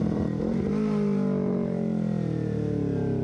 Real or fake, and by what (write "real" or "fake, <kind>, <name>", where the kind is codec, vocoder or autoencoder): real